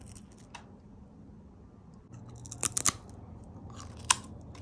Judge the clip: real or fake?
real